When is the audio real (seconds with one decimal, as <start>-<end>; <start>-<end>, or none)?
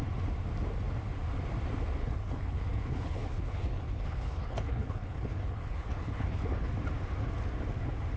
0.0-2.0; 6.7-8.2